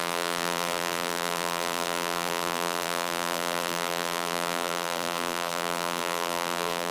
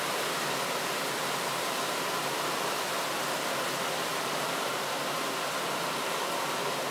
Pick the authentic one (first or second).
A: second